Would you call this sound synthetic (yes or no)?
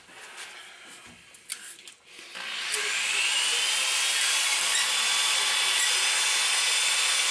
no